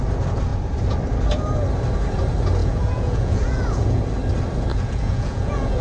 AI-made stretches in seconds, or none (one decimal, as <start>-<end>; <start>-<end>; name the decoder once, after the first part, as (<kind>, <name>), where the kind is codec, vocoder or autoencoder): 2.6-4.0 (vocoder, Vocos); 4.7-5.8